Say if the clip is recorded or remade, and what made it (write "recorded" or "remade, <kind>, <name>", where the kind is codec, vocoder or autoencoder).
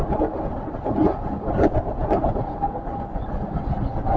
recorded